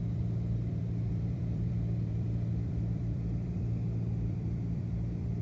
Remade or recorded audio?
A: remade